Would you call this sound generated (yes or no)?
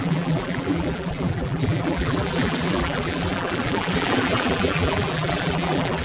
yes